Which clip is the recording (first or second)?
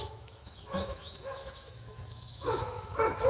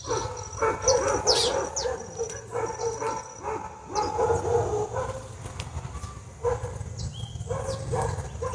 second